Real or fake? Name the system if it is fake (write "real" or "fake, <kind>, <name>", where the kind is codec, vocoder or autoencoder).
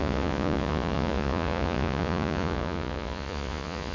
fake, vocoder, Vocos